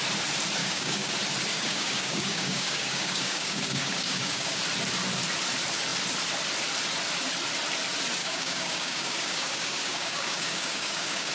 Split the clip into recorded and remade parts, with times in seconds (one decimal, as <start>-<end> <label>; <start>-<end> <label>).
0.0-0.6 recorded; 0.6-1.1 remade; 1.1-1.5 recorded; 1.5-4.6 remade; 4.6-8.2 recorded; 8.2-11.3 remade